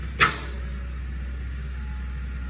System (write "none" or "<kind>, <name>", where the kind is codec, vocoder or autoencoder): none